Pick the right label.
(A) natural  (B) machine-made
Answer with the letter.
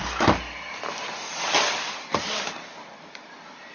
B